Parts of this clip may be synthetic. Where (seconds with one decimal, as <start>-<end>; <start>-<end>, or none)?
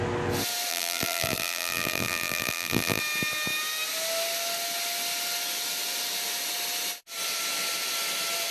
0.7-3.0